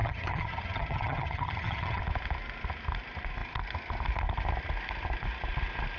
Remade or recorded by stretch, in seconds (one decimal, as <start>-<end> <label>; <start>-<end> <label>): 0.0-2.0 remade; 2.0-6.0 recorded